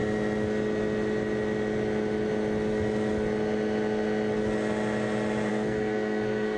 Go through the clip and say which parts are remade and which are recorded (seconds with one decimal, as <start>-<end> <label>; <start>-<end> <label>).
0.0-5.5 recorded; 5.5-6.6 remade